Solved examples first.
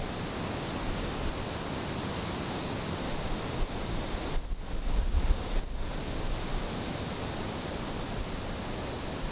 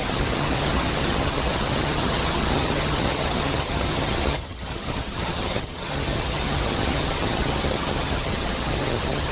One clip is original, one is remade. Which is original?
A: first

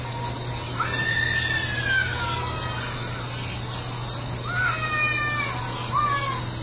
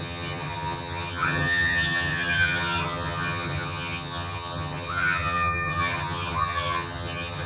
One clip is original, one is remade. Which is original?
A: first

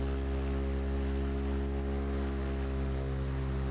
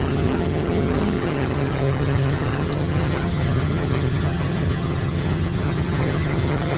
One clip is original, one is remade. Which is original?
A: first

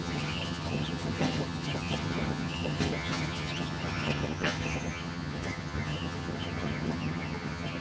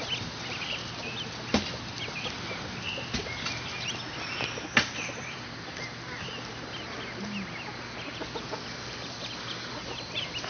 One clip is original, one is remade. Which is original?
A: second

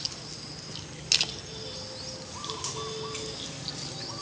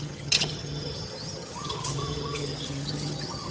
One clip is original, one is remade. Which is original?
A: first